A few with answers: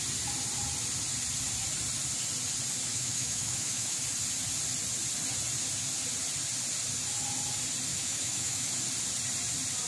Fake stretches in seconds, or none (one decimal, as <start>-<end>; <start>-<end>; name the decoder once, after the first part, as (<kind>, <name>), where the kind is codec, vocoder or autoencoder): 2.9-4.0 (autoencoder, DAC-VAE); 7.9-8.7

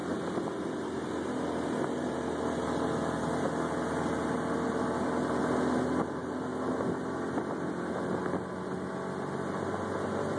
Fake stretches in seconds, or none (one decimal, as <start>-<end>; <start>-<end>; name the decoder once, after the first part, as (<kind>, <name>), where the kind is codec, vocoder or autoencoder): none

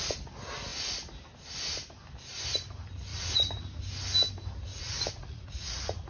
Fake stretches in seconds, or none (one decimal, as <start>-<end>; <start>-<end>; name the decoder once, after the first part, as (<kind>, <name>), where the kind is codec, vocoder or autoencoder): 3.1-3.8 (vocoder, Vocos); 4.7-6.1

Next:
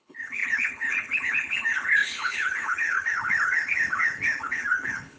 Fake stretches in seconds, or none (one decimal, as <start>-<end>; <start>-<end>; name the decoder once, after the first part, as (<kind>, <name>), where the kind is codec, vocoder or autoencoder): 0.0-5.2 (codec, HILCodec)

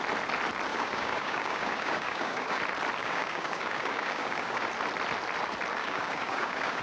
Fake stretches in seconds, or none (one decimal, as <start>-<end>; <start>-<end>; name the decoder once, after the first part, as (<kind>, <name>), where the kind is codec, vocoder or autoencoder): 0.7-2.6 (codec, DAC); 3.0-4.7; 5.8-6.8

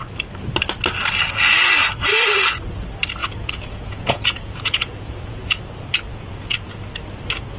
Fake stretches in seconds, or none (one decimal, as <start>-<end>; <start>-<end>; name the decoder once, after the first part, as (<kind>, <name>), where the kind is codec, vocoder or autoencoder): 3.2-5.6 (vocoder, Vocos); 6.1-6.9

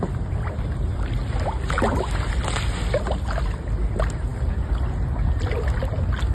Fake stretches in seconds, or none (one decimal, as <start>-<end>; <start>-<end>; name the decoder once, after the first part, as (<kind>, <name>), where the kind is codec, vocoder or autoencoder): none

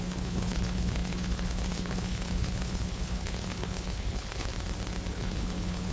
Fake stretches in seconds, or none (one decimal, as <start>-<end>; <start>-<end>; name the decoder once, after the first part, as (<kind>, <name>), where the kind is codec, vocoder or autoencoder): 0.0-4.5 (codec, HILCodec); 5.1-5.9